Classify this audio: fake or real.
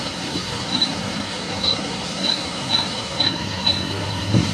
fake